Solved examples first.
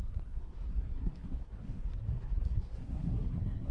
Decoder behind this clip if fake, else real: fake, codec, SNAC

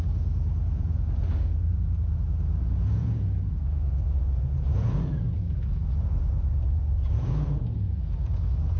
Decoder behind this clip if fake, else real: fake, vocoder, Vocos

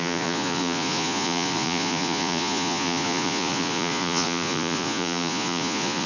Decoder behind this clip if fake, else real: fake, vocoder, Vocos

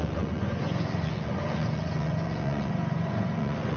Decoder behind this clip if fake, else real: fake, vocoder, Vocos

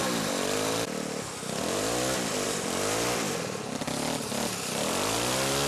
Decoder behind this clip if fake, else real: real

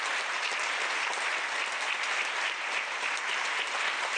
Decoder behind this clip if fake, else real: real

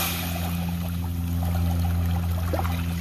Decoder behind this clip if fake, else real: real